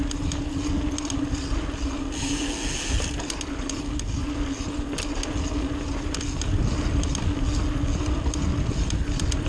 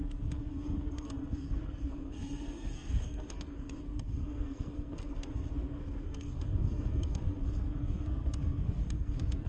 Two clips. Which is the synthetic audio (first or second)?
second